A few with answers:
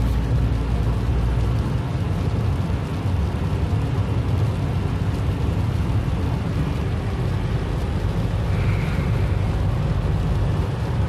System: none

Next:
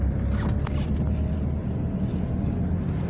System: none